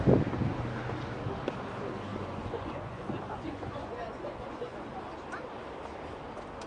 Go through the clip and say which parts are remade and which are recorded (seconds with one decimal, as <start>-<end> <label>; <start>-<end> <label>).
0.0-2.1 recorded; 2.1-5.0 remade; 5.0-6.7 recorded